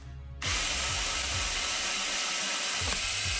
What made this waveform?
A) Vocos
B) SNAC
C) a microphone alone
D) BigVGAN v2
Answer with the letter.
C